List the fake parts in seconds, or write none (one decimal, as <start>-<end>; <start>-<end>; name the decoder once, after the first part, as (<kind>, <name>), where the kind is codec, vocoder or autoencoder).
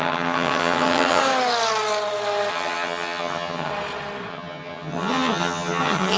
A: 0.0-1.2 (vocoder, HiFi-GAN); 2.5-3.7; 4.3-6.2